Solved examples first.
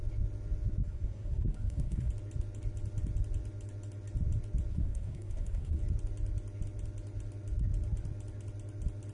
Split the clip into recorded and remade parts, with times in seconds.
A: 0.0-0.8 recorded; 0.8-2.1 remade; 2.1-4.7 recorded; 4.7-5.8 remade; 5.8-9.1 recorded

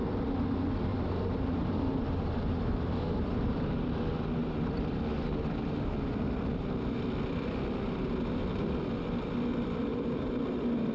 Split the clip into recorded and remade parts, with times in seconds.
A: 0.0-0.9 recorded; 0.9-4.0 remade; 4.0-9.9 recorded; 9.9-10.4 remade; 10.4-10.9 recorded

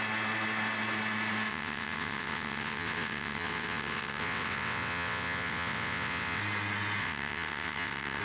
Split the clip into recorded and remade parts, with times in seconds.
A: 0.0-1.5 recorded; 1.5-6.4 remade; 6.4-7.0 recorded; 7.0-8.2 remade

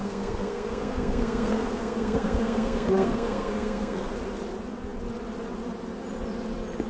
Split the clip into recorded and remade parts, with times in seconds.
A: 0.0-4.1 remade; 4.1-6.9 recorded

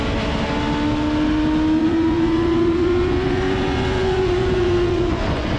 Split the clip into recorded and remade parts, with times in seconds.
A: 0.0-1.8 recorded; 1.8-5.6 remade

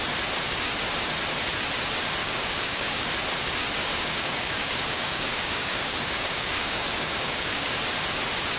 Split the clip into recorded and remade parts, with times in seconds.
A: 0.0-2.2 recorded; 2.2-3.1 remade; 3.1-3.8 recorded; 3.8-7.8 remade; 7.8-8.6 recorded

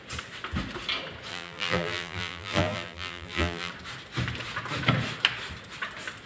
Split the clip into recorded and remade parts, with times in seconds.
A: 0.0-1.3 recorded; 1.3-3.7 remade; 3.7-6.3 recorded